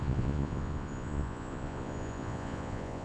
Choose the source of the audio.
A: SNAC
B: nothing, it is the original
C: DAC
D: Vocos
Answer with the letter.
D